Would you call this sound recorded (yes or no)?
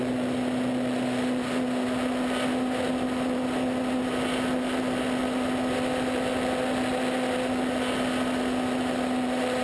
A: yes